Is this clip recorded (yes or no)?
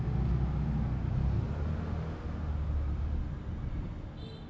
yes